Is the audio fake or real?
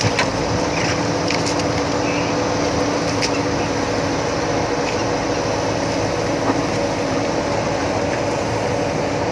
real